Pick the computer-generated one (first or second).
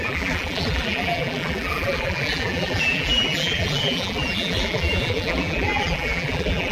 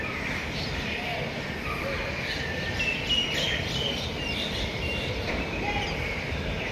first